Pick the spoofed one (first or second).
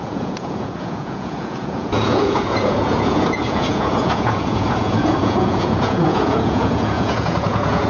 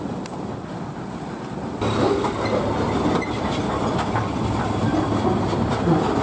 first